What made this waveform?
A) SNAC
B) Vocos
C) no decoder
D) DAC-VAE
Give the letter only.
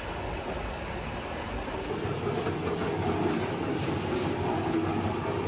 C